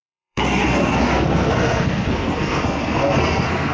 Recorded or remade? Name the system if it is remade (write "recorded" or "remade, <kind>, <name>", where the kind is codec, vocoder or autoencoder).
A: remade, codec, SNAC